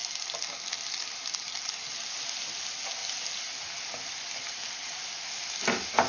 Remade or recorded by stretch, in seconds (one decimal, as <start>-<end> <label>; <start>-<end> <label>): 0.0-6.1 recorded